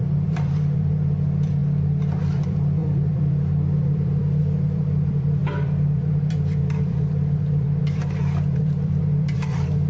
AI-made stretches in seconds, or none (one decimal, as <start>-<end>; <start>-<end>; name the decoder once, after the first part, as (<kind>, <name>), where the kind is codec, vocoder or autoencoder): 0.0-1.6 (vocoder, BigVGAN v2); 2.2-9.9